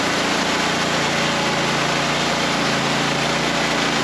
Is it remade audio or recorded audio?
recorded